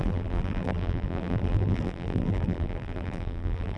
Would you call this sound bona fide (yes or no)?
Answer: no